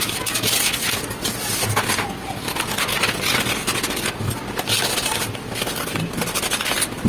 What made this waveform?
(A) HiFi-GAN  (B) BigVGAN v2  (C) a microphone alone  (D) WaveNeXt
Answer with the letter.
C